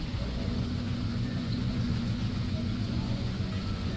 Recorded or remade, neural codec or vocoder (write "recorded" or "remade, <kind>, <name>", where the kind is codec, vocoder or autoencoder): remade, vocoder, Vocos